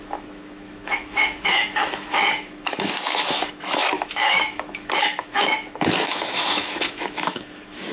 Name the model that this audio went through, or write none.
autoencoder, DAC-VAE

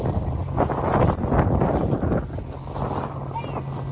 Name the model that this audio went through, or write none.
none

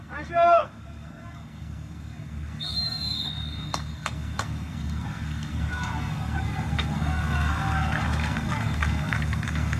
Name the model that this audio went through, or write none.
codec, SNAC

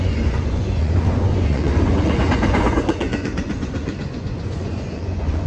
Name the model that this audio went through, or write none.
vocoder, Vocos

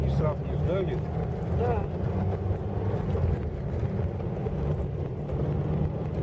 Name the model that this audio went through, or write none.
none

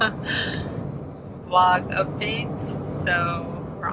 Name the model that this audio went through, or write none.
none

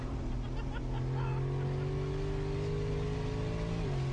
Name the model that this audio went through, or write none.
none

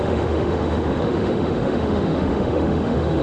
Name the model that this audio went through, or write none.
autoencoder, DAC-VAE